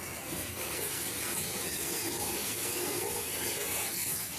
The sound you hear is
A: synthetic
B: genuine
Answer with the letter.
A